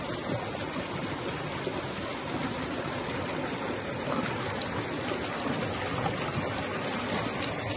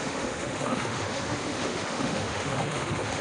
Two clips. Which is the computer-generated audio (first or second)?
second